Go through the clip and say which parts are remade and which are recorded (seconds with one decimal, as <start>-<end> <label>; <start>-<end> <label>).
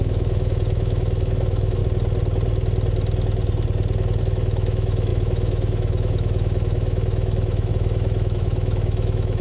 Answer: 0.0-1.8 remade; 1.8-4.2 recorded; 4.2-9.4 remade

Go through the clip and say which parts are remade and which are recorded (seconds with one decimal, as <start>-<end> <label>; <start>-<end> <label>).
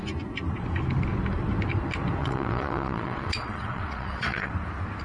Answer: 0.0-2.2 recorded; 2.2-4.5 remade; 4.5-5.0 recorded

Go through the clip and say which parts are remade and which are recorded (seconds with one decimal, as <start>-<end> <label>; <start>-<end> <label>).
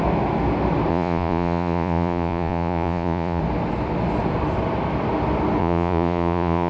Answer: 0.0-0.9 recorded; 0.9-3.4 remade; 3.4-5.6 recorded; 5.6-6.7 remade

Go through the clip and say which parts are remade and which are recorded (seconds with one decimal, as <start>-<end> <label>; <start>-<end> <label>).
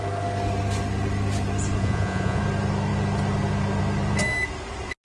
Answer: 0.0-1.8 recorded; 1.8-2.4 remade; 2.4-5.0 recorded